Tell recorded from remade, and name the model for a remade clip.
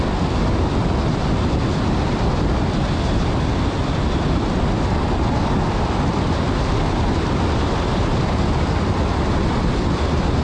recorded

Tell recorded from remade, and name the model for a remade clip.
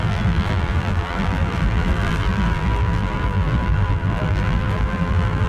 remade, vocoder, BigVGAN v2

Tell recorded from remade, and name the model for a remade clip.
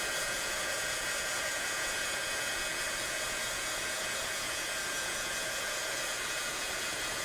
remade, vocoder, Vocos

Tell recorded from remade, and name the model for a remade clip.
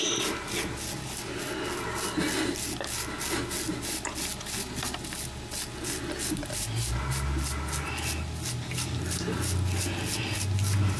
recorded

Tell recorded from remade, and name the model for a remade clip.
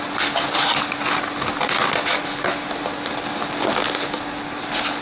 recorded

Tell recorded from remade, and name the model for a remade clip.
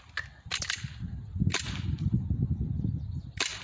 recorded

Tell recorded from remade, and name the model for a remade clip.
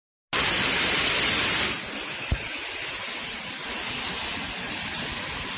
recorded